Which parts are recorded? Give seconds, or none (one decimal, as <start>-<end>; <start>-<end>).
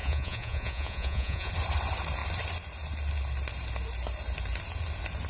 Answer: 1.5-5.3